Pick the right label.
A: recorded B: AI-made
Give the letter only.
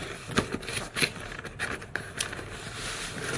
A